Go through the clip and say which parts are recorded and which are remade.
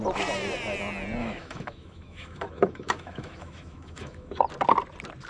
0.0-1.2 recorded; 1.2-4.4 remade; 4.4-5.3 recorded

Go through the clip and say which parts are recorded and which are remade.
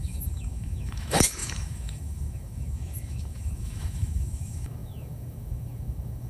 0.0-6.3 remade